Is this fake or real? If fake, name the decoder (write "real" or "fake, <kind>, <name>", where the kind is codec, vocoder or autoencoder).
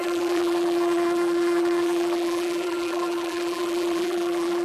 fake, vocoder, BigVGAN v2